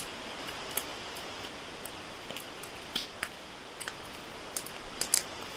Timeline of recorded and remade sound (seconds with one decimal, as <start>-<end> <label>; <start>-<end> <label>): 0.0-5.6 recorded